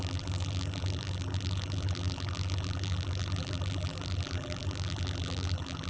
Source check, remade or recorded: remade